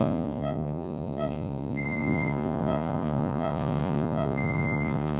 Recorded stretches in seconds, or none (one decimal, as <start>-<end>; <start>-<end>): none